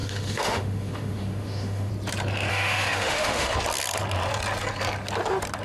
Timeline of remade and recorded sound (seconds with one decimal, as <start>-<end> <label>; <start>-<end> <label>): 0.0-1.9 remade; 1.9-2.5 recorded; 2.5-3.5 remade; 3.5-5.6 recorded